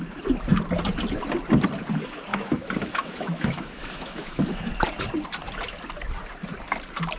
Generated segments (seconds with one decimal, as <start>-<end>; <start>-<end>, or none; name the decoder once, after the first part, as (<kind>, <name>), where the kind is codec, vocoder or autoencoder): 2.3-4.7 (autoencoder, DAC-VAE)